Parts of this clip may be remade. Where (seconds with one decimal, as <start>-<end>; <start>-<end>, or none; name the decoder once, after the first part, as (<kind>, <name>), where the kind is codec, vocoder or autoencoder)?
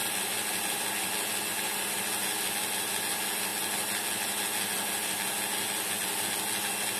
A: none